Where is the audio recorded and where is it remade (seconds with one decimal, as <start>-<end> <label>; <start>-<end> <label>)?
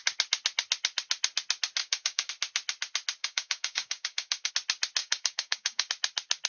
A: 0.0-1.8 recorded; 1.8-2.3 remade; 2.3-3.2 recorded; 3.2-4.5 remade; 4.5-5.0 recorded; 5.0-5.9 remade; 5.9-6.5 recorded